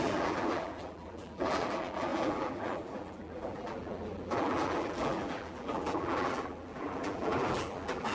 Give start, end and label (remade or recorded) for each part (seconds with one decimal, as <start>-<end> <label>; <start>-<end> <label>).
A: 0.0-8.1 remade